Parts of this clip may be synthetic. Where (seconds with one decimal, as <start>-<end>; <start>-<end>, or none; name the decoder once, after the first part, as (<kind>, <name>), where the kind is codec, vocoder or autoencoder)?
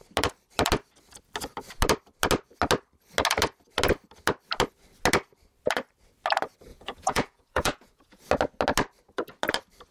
6.7-8.2 (vocoder, Vocos)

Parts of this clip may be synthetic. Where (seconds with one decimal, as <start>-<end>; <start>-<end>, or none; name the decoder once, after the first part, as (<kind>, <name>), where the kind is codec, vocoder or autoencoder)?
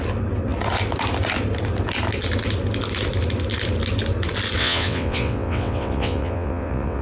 4.6-7.0 (vocoder, WaveNeXt)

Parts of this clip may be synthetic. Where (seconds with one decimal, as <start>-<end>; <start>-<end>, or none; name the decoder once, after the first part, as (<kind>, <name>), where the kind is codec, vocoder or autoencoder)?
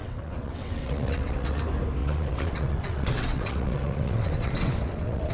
0.0-1.6 (vocoder, WaveNeXt); 2.0-5.3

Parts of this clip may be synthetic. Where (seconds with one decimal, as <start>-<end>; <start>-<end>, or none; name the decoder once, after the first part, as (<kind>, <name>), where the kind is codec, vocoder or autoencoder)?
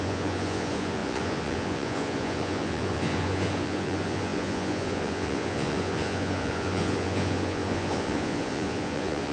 0.0-9.3 (vocoder, Vocos)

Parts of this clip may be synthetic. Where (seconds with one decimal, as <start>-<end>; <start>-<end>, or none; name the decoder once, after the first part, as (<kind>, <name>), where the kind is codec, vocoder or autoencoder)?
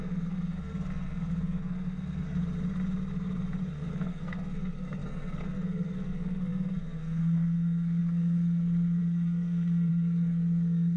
0.0-2.4 (codec, SNAC); 3.9-11.0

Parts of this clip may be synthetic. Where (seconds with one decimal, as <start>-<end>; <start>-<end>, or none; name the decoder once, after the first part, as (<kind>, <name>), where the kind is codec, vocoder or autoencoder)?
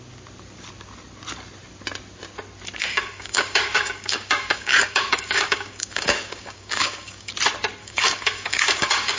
2.8-7.3 (codec, DAC); 7.8-9.2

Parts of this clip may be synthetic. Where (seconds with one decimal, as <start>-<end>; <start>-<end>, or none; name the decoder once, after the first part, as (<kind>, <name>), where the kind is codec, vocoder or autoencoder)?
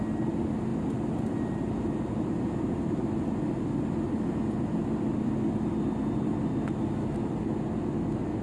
none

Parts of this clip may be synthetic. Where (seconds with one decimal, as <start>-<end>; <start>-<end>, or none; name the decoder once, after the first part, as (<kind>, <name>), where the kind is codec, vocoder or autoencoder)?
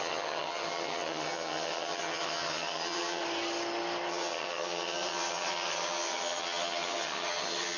0.0-3.2 (vocoder, HiFi-GAN); 4.1-7.8